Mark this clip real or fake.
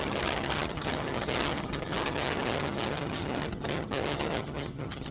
fake